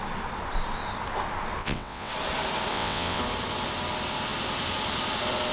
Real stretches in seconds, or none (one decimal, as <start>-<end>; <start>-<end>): 0.0-1.6; 2.1-2.7; 3.2-5.5